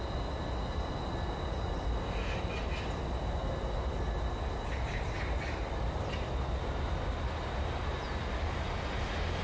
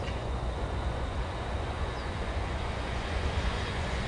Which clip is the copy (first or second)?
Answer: second